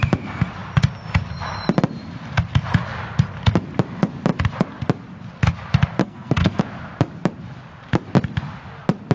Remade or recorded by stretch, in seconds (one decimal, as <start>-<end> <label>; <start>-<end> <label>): 0.0-6.0 recorded; 6.0-6.6 remade; 6.6-9.1 recorded